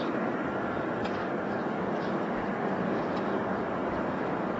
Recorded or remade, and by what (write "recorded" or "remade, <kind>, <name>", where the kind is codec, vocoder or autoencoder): remade, codec, DAC